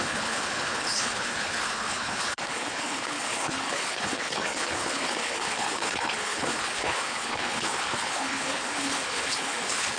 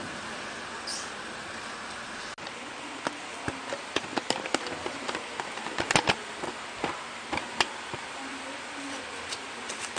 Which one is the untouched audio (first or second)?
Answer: second